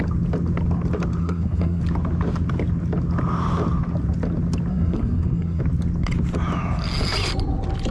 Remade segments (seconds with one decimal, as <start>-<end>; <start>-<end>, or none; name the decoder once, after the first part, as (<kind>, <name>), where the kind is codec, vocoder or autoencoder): 1.2-1.8 (codec, SNAC); 4.7-5.6